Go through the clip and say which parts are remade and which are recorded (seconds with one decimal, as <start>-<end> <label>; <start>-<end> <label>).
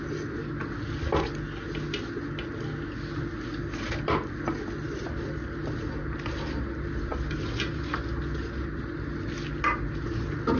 0.0-10.6 recorded